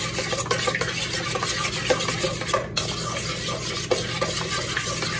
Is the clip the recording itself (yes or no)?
yes